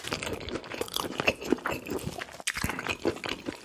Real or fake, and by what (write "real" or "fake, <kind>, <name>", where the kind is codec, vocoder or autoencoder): real